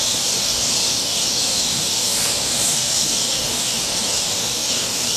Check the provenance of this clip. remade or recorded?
remade